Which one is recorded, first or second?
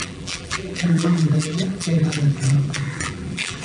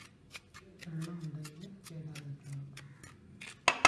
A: second